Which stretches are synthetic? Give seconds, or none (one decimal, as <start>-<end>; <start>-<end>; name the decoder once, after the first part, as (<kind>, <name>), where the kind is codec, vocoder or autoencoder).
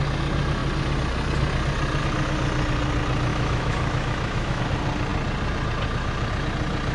3.3-4.6 (autoencoder, DAC-VAE)